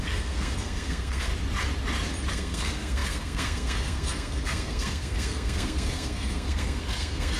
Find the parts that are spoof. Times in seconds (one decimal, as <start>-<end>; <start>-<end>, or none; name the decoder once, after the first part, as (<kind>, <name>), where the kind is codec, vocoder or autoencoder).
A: 0.0-1.3 (codec, SNAC); 2.3-7.4